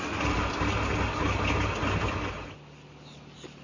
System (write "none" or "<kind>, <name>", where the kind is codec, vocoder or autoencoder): none